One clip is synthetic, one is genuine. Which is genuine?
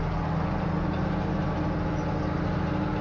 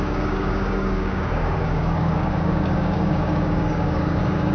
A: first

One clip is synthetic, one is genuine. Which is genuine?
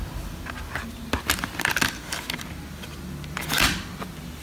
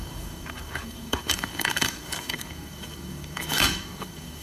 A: first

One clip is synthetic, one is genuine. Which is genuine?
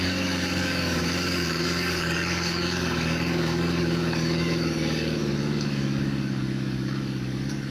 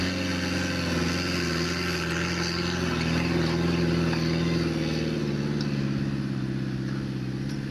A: second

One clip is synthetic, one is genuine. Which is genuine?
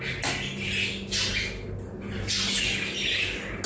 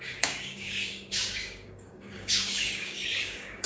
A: first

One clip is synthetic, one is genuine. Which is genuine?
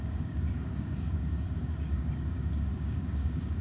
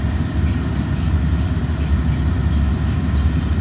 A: second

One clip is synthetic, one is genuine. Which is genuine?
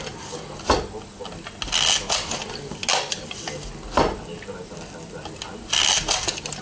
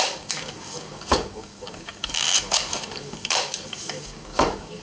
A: first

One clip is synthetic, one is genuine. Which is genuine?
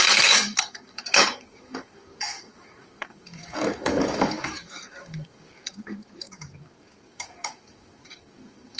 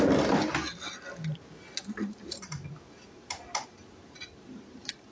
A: second